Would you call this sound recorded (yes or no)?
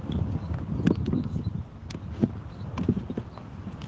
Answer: yes